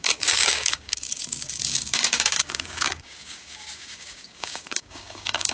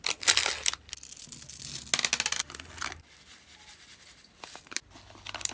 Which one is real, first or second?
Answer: second